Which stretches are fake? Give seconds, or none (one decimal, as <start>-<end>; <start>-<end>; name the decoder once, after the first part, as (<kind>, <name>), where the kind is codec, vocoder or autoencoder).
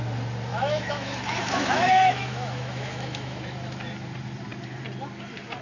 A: 0.5-3.4 (autoencoder, DAC-VAE)